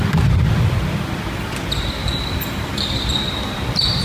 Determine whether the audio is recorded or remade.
remade